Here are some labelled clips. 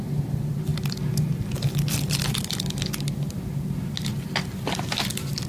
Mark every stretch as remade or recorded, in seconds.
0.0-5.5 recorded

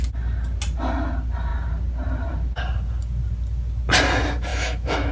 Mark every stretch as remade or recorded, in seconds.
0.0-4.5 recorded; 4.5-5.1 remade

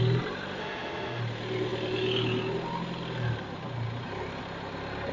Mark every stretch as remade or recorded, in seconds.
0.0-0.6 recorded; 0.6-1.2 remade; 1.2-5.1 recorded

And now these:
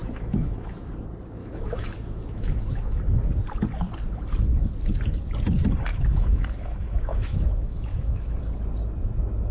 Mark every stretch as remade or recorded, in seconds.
0.0-0.9 remade; 0.9-1.4 recorded; 1.4-3.0 remade; 3.0-5.9 recorded; 5.9-8.4 remade; 8.4-9.5 recorded

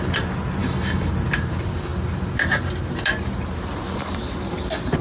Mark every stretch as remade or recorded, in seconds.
0.0-0.6 recorded; 0.6-1.1 remade; 1.1-5.0 recorded